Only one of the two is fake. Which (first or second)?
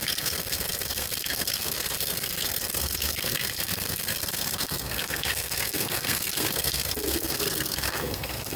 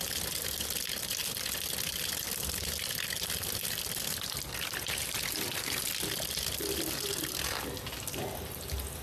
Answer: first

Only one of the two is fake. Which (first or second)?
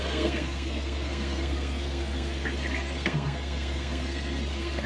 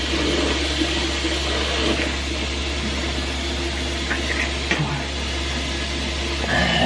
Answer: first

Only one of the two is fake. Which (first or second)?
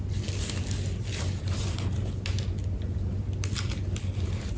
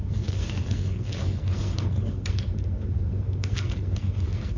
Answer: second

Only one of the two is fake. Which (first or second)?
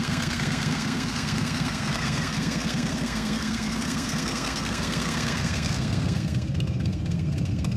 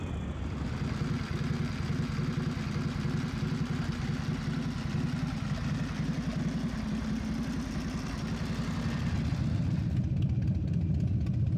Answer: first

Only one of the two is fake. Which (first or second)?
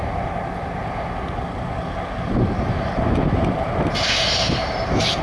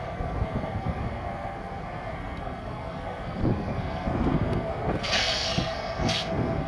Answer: second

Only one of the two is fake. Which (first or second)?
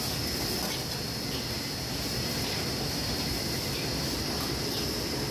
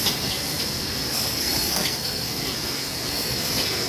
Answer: second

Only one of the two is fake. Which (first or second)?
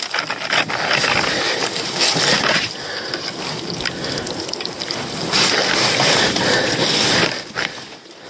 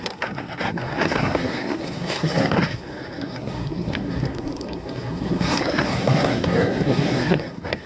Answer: second